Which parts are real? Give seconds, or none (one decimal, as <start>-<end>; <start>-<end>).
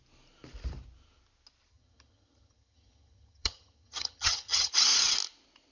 0.0-1.7; 4.7-5.7